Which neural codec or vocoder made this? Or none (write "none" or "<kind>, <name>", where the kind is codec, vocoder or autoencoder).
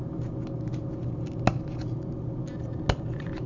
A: none